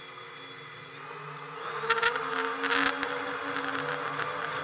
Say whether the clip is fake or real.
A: real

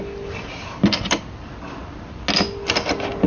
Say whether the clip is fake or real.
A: real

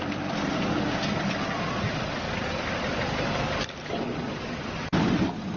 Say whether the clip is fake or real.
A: real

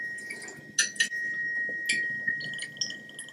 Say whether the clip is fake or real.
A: real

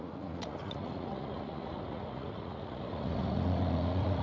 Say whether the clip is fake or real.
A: fake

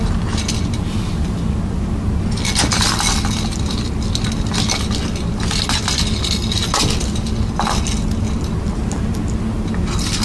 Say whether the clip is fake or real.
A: real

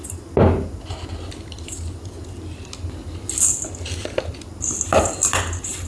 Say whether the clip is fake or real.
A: real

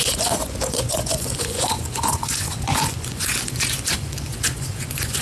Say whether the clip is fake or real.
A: fake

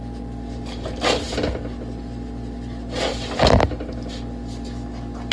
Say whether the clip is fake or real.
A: real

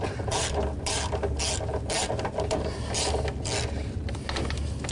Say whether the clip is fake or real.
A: real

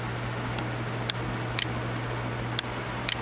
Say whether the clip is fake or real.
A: real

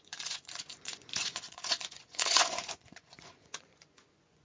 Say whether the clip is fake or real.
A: fake